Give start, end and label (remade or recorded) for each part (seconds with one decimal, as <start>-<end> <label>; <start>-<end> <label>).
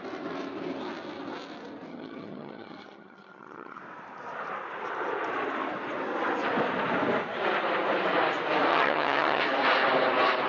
0.0-1.9 recorded; 1.9-3.8 remade; 3.8-8.7 recorded; 8.7-9.4 remade; 9.4-10.5 recorded